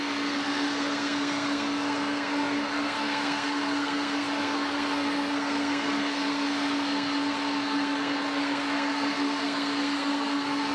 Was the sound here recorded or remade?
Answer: remade